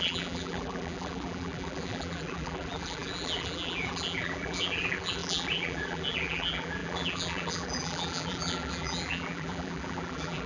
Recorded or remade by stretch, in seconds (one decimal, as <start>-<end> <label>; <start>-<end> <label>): 0.0-10.5 remade